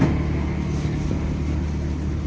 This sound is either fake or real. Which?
real